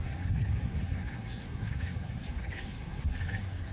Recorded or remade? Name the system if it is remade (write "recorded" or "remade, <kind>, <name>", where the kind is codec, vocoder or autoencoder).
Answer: remade, codec, SNAC